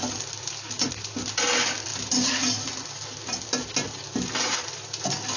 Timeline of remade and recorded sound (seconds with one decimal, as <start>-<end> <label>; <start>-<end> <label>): 0.0-5.4 recorded